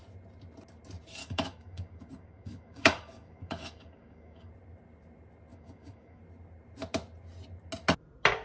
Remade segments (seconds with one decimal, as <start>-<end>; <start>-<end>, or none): 1.2-4.5; 5.5-6.2